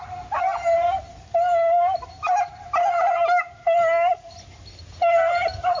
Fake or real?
real